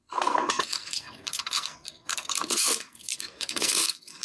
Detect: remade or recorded remade